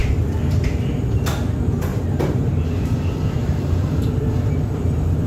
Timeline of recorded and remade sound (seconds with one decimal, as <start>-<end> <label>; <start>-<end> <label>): 0.0-1.2 remade; 1.2-1.9 recorded; 1.9-2.5 remade; 2.5-3.4 recorded; 3.4-4.3 remade; 4.3-5.3 recorded